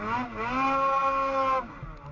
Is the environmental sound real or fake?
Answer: real